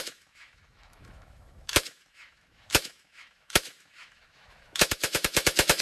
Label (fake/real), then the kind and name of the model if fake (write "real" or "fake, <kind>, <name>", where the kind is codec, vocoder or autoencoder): fake, autoencoder, DAC-VAE